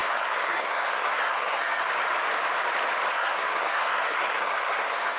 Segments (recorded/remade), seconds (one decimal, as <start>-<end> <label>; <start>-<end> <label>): 0.0-1.8 remade; 1.8-3.1 recorded; 3.1-5.2 remade